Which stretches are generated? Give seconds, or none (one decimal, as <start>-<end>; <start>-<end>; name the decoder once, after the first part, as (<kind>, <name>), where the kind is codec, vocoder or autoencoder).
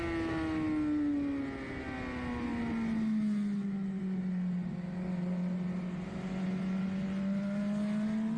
none